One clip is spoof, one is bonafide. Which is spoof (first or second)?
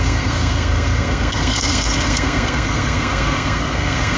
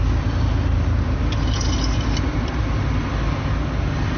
first